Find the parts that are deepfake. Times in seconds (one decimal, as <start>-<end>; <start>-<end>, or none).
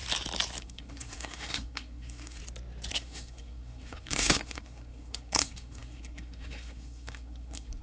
0.6-2.4; 2.9-7.8